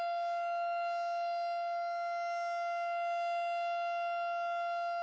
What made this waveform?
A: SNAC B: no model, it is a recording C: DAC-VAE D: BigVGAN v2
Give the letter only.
B